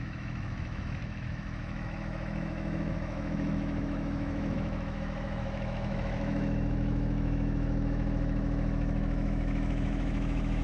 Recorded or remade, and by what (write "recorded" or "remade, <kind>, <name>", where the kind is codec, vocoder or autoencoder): remade, autoencoder, DAC-VAE